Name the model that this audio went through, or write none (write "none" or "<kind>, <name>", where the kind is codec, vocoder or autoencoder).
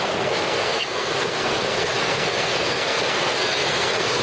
codec, SNAC